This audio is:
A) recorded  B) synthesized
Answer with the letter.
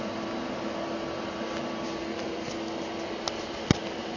A